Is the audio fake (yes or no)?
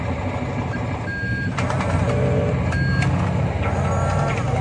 no